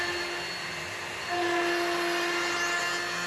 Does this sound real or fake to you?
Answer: real